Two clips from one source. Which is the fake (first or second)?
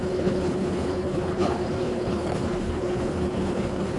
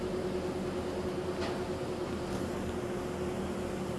first